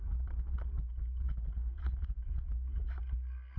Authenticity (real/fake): real